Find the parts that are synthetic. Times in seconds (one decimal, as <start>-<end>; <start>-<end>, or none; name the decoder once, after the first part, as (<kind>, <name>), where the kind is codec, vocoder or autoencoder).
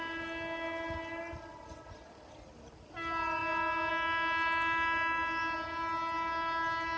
none